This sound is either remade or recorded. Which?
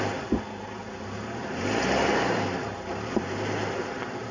recorded